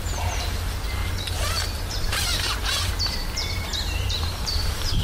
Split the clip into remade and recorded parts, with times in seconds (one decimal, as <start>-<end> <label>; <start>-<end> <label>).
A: 0.0-1.0 remade; 1.0-1.8 recorded; 1.8-2.3 remade; 2.3-2.8 recorded; 2.8-5.0 remade